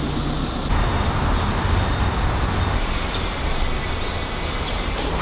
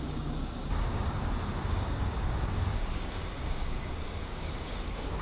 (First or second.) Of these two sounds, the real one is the first